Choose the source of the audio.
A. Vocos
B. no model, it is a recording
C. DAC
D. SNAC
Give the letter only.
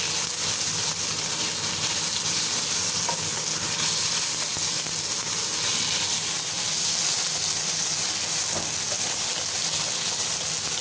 B